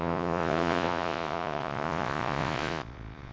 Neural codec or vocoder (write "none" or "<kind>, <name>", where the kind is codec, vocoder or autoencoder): vocoder, Vocos